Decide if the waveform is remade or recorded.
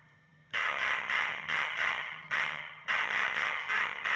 remade